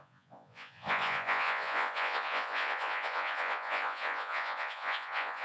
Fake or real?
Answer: fake